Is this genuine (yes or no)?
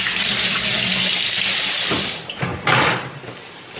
yes